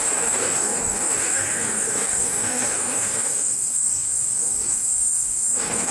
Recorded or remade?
remade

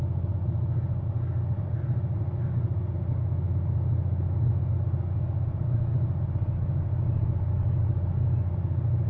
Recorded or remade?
recorded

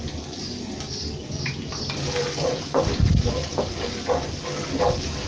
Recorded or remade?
recorded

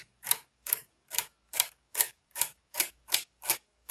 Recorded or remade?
remade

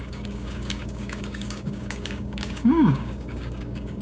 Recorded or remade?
remade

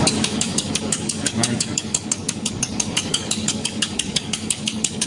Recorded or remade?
remade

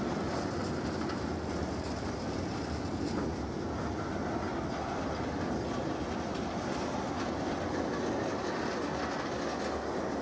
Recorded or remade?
recorded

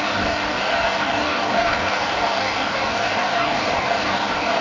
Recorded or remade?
remade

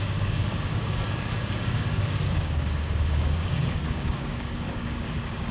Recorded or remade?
remade